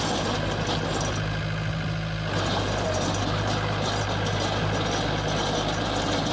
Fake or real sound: real